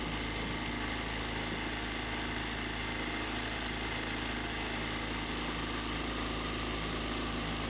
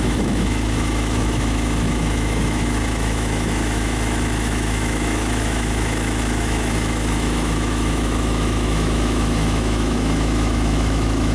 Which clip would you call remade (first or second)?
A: second